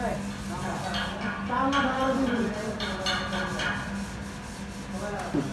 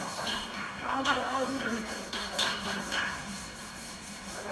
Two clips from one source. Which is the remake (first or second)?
second